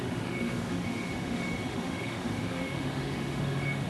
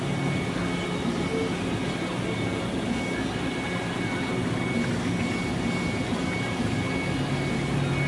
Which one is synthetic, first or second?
first